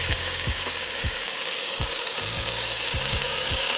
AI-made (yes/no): yes